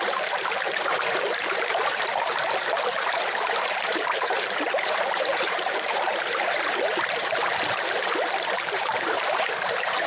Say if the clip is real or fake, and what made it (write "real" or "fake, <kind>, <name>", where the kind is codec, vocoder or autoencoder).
fake, vocoder, BigVGAN v2